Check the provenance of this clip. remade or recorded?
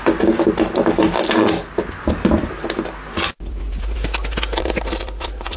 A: recorded